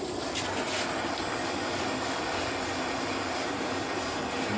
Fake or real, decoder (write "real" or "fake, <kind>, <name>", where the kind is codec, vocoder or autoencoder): real